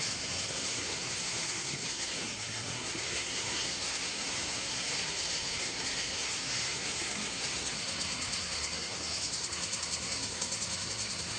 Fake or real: fake